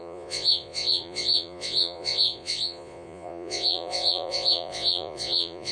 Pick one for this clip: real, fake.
fake